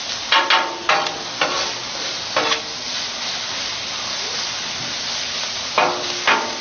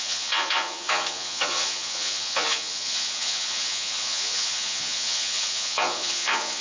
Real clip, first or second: first